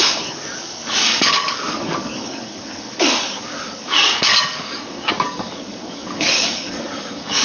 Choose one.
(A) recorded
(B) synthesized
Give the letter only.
B